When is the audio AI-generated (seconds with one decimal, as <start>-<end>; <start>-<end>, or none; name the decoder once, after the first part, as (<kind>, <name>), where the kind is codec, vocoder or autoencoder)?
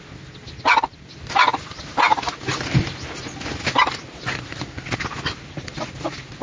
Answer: none